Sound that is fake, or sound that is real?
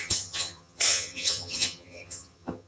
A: fake